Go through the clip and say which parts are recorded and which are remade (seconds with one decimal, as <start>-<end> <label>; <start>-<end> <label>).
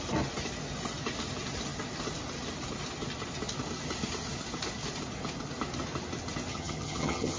0.0-6.5 recorded; 6.5-7.4 remade